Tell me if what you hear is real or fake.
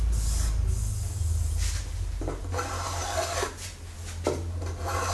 real